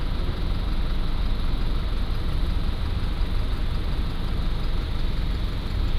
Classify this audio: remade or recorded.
recorded